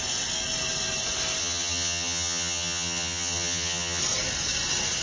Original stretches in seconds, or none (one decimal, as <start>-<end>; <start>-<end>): 0.0-1.4; 4.0-5.0